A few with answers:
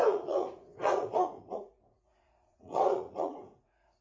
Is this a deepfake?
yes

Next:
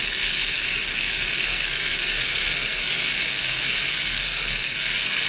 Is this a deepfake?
yes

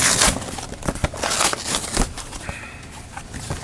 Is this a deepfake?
no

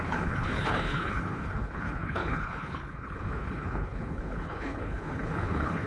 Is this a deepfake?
yes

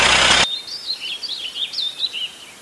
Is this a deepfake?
no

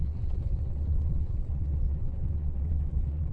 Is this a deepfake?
yes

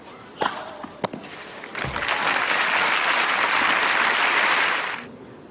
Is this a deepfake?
no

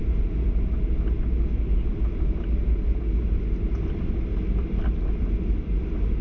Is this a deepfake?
no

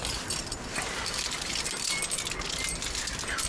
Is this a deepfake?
no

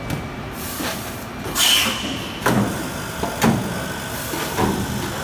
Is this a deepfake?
no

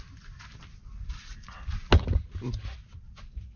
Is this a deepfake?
no